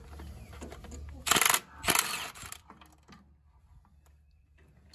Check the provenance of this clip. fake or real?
real